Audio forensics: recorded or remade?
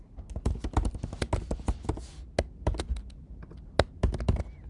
recorded